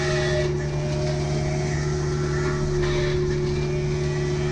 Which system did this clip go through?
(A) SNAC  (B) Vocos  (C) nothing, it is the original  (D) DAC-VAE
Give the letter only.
C